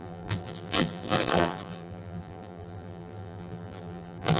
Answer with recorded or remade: remade